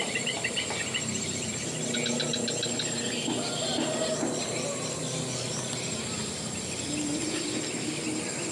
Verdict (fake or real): real